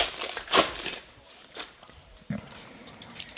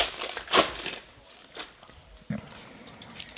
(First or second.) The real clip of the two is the second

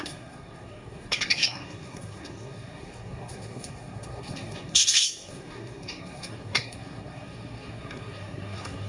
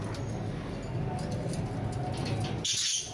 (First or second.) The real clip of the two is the second